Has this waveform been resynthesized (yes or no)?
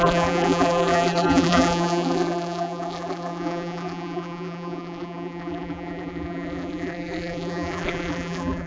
yes